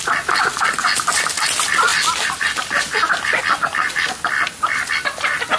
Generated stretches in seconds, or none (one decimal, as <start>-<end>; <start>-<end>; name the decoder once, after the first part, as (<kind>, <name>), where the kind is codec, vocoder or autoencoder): none